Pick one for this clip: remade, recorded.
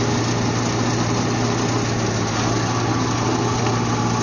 recorded